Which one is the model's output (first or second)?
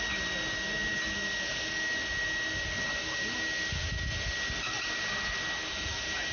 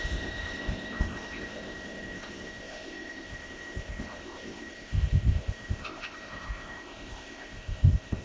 second